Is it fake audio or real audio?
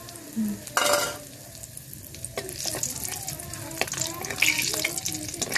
real